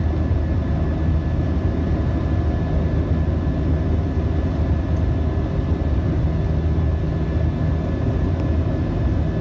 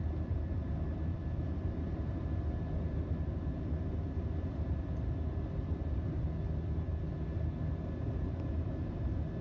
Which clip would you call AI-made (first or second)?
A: second